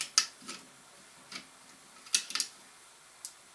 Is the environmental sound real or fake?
real